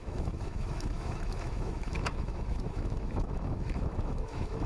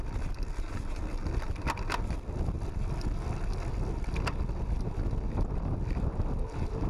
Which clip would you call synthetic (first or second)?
first